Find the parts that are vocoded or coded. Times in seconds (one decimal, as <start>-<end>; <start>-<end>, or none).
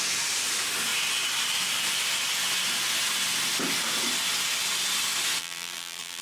5.4-6.2